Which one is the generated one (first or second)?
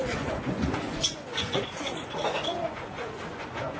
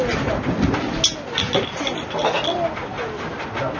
first